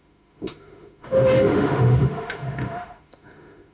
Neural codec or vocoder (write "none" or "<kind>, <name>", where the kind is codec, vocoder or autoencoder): autoencoder, DAC-VAE